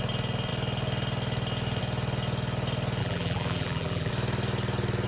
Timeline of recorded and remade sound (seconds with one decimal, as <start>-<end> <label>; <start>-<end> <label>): 0.0-3.0 recorded; 3.0-4.1 remade; 4.1-5.1 recorded